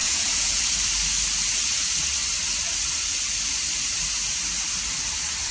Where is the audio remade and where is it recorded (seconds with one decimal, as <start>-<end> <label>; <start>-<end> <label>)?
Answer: 0.0-0.6 remade; 0.6-5.5 recorded